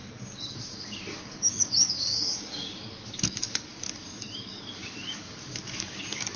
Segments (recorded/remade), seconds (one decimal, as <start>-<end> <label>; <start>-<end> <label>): 0.0-6.4 remade